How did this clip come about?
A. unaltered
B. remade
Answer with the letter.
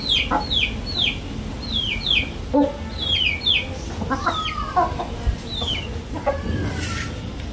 A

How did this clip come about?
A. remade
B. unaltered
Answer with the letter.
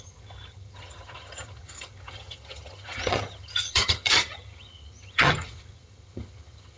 A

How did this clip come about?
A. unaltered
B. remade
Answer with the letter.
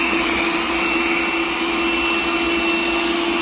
A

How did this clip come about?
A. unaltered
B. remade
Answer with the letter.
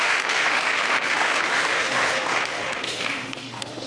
B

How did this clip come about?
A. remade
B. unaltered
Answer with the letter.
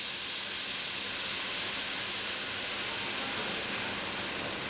B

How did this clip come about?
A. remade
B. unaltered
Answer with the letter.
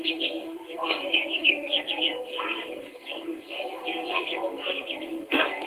A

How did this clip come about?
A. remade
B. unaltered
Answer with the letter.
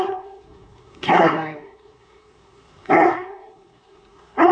A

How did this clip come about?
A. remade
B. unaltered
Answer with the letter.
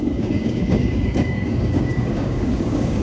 A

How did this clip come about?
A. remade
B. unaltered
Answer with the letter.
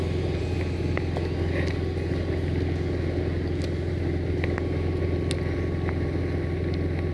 B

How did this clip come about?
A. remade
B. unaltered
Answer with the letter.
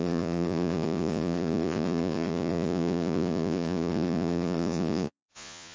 A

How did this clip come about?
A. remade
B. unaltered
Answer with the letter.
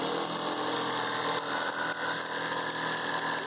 B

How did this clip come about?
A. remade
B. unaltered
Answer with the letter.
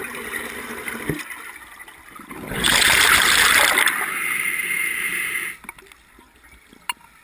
B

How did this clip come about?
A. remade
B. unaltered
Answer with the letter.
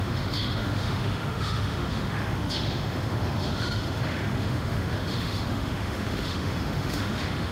A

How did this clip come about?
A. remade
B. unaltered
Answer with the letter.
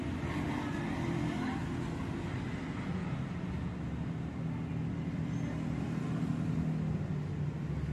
B